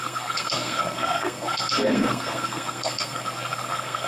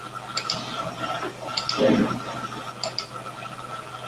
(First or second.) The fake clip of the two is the first